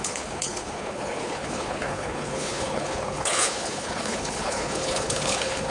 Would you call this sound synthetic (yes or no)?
yes